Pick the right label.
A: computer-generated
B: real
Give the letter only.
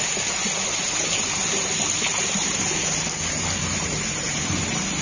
B